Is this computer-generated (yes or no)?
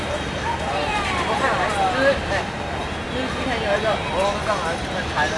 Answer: no